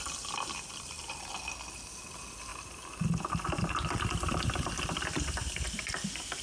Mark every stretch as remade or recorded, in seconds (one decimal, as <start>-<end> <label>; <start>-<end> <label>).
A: 0.0-6.4 recorded